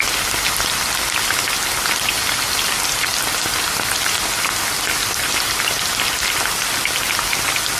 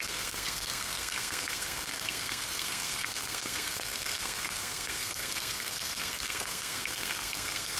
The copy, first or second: second